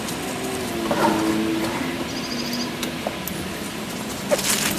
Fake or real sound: real